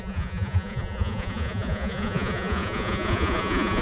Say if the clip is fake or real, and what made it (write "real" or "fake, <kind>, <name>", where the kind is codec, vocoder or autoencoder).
fake, vocoder, Vocos